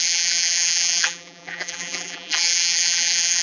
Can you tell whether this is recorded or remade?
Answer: remade